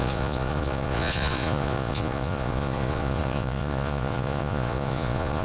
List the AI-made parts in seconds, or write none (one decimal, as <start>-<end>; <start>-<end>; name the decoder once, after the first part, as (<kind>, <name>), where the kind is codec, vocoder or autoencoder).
0.0-5.4 (vocoder, Vocos)